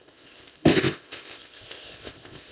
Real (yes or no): no